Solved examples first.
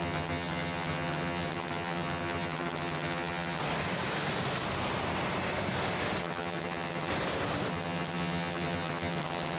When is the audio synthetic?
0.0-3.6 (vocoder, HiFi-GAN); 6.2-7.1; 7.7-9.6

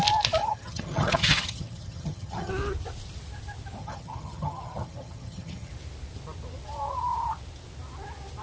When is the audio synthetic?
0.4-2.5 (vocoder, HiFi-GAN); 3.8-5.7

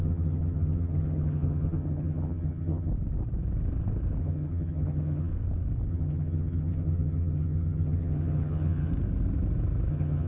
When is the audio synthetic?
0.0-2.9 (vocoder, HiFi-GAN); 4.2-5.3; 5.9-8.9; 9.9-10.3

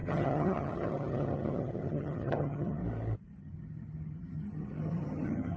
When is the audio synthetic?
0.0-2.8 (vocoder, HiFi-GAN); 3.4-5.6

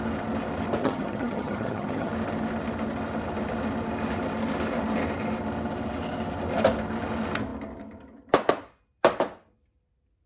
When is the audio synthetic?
0.8-2.1 (vocoder, HiFi-GAN)